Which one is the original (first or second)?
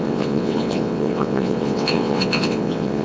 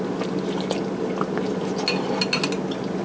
second